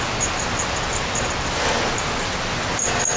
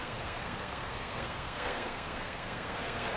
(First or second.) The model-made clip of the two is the second